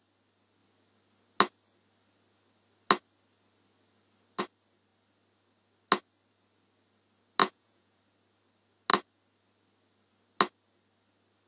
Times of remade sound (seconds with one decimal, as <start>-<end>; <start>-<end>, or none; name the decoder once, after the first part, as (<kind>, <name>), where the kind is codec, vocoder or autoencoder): 7.4-8.0 (vocoder, Vocos)